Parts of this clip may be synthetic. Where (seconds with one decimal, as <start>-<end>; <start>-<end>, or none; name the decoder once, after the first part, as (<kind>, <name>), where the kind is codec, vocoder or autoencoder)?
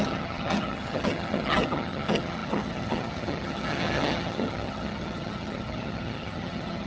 0.0-6.9 (vocoder, HiFi-GAN)